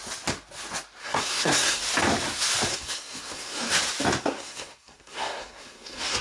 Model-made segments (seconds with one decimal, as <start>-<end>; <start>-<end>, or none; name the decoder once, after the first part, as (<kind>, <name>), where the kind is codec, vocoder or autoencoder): 1.0-1.8 (codec, SNAC); 2.7-3.7; 4.2-6.2